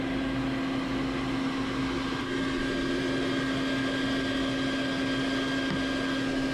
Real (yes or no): yes